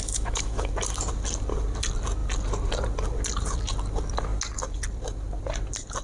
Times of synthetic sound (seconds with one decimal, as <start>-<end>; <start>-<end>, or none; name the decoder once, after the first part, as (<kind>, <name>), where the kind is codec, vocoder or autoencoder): 0.0-0.7 (autoencoder, DAC-VAE)